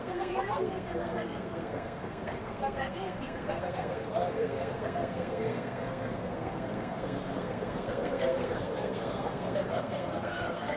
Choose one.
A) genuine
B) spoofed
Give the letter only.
B